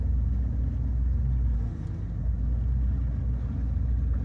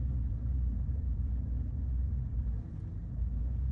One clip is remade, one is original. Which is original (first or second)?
first